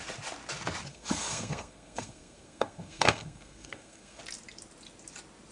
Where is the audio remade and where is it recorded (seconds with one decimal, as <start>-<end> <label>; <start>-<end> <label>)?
0.0-0.9 recorded; 0.9-4.2 remade; 4.2-5.5 recorded